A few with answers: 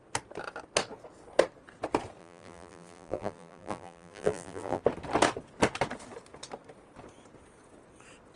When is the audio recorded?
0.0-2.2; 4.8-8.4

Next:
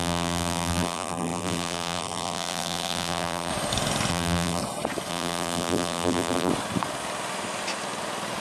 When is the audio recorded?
3.5-4.1; 4.6-5.1; 6.5-8.4

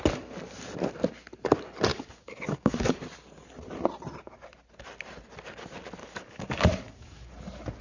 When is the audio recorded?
0.0-1.9; 3.0-6.0; 7.3-7.8

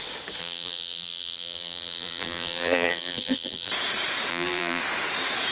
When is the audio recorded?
0.0-0.4; 3.7-4.3; 4.8-5.5